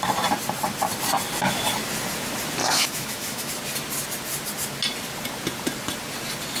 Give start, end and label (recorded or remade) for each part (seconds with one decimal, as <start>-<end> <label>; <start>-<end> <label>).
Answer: 0.0-2.6 recorded; 2.6-3.5 remade; 3.5-6.6 recorded